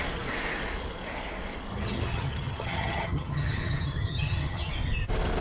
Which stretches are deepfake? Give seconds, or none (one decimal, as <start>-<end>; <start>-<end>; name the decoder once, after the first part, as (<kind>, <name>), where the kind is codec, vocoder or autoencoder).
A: 1.7-4.7 (vocoder, HiFi-GAN)